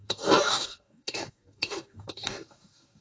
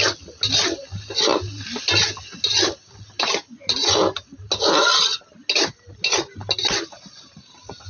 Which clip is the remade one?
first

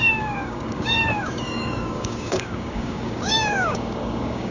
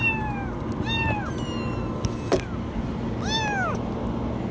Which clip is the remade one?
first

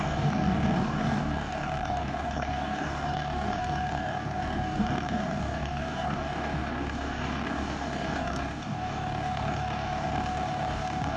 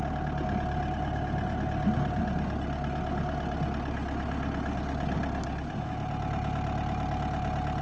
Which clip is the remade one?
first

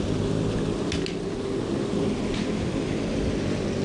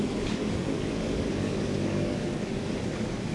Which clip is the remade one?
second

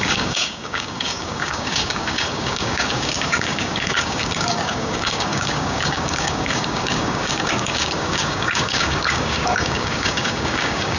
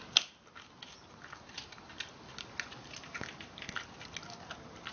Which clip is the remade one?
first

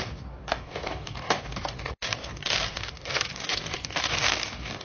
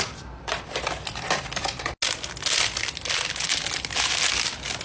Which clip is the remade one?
first